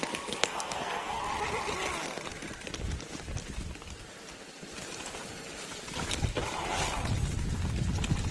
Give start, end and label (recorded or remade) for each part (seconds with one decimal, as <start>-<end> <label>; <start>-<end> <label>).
0.0-0.4 recorded; 0.4-1.2 remade; 1.2-8.3 recorded